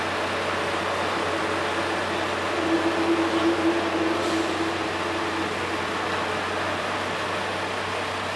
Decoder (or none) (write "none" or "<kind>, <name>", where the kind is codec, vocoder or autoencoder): none